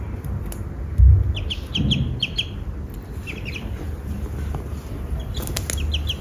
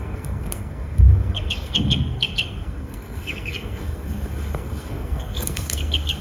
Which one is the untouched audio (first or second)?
first